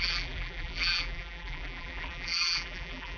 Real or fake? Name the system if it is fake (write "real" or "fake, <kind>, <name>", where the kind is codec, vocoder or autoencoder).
fake, vocoder, BigVGAN v2